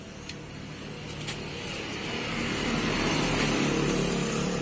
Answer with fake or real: real